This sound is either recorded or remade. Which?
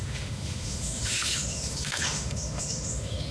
remade